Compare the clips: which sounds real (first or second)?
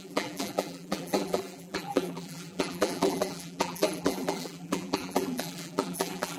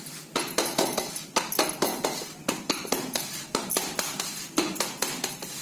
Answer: second